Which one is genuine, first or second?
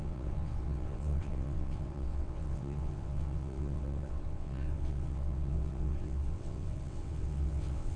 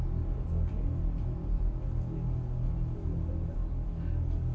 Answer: second